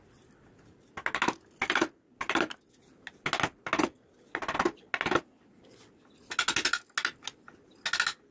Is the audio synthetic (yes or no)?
no